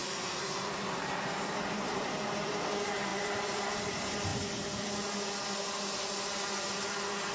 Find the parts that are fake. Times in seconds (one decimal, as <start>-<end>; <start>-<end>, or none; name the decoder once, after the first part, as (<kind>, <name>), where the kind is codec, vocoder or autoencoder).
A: 0.0-4.3 (vocoder, BigVGAN v2)